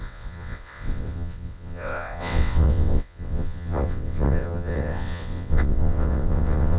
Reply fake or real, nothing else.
fake